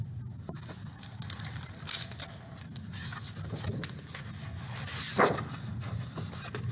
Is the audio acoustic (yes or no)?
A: yes